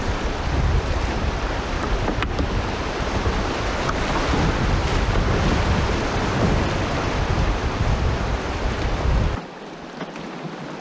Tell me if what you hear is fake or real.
fake